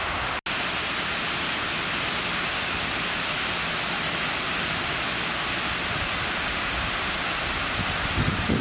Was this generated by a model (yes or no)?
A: no